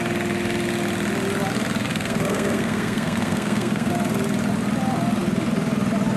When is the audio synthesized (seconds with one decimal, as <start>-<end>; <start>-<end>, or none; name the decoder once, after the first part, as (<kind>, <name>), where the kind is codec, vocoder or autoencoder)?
1.9-3.9 (codec, SNAC)

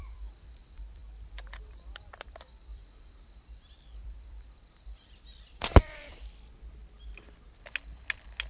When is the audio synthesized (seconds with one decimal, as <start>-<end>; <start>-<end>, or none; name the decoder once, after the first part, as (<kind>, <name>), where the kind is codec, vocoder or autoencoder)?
0.0-6.8 (vocoder, BigVGAN v2)

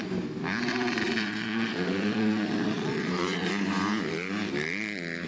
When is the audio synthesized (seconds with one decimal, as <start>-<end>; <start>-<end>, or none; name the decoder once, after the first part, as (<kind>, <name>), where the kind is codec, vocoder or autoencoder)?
0.7-3.5 (vocoder, Vocos)

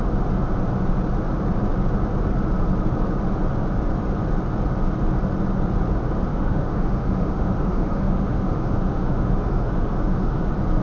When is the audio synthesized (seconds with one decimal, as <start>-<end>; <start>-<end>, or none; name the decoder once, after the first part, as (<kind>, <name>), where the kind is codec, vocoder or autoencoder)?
6.3-10.4 (autoencoder, DAC-VAE)

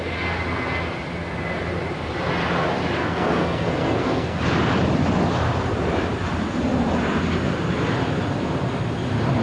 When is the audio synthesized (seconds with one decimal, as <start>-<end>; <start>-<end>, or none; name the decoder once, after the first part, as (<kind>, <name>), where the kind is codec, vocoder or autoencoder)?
3.0-4.4 (codec, SNAC)

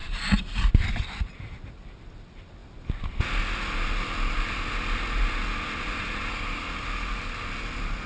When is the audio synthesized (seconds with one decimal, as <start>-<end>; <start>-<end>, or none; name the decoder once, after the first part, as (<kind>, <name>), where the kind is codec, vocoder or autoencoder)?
none